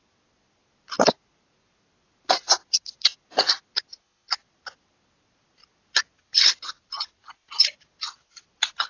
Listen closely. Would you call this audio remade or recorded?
recorded